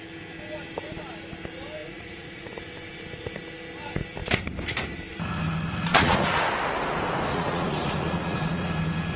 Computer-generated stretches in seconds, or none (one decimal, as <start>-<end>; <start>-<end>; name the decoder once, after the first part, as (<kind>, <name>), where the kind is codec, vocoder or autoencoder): 1.8-2.6 (vocoder, Vocos); 5.9-6.4; 7.3-8.7